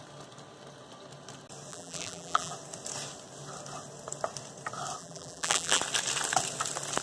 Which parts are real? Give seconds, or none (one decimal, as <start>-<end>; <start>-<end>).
0.0-1.7; 2.5-5.0; 5.8-7.0